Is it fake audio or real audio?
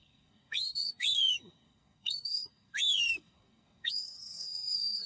fake